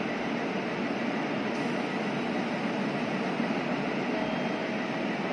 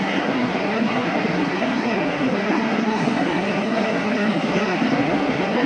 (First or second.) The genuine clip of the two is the first